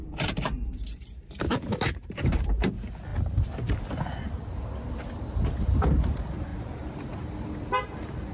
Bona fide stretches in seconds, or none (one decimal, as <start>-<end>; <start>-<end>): 2.7-6.5; 7.3-8.3